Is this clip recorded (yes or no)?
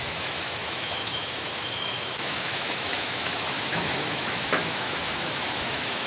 no